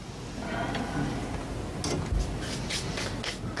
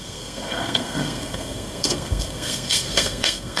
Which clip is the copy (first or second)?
second